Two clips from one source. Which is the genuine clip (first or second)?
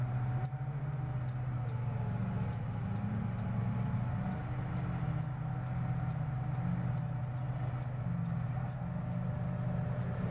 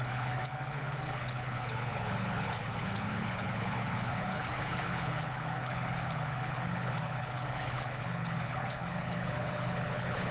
first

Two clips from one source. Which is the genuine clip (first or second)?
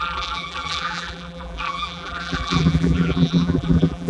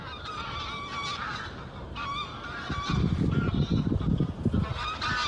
second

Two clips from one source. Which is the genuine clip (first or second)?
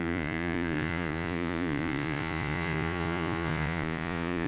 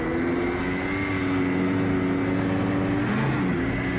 second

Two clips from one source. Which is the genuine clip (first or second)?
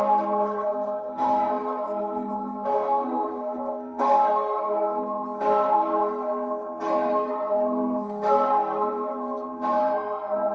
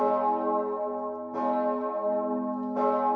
second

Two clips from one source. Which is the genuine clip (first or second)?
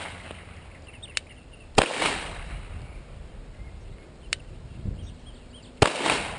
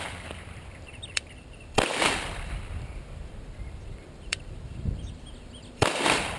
first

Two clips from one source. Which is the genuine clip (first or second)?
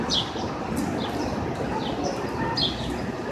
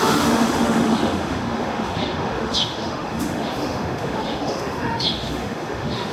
first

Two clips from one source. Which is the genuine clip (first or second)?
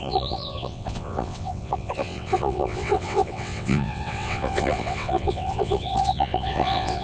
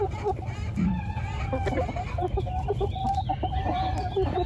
second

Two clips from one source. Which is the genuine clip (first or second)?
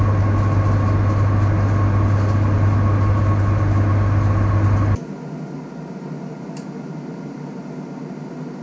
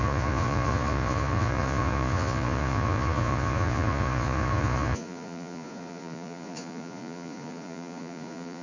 first